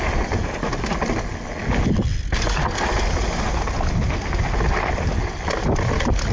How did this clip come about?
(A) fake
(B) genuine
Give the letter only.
B